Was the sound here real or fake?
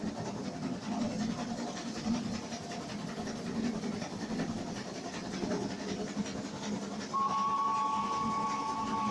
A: real